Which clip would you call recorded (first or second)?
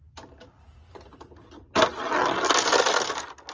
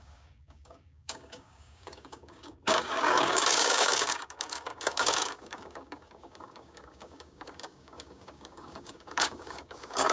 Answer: first